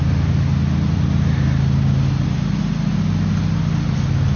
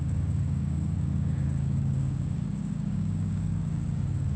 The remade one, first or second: second